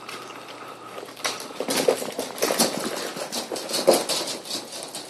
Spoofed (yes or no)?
no